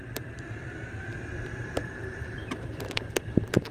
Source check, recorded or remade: remade